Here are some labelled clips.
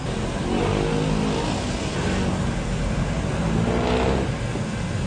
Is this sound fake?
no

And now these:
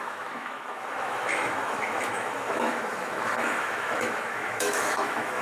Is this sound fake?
yes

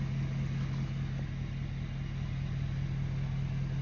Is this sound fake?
no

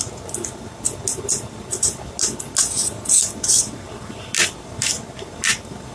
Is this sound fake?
no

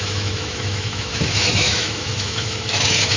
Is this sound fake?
yes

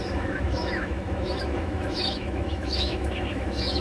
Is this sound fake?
yes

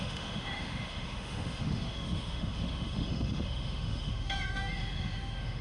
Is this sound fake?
yes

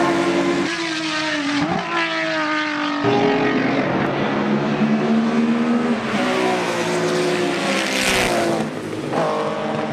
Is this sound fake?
no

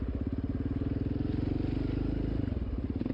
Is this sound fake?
no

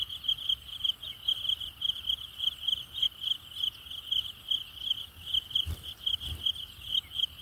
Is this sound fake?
no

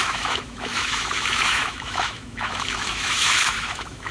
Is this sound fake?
yes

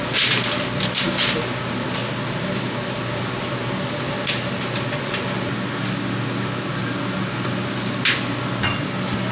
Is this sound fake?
no